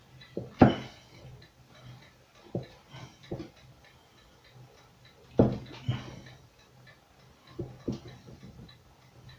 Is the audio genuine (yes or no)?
yes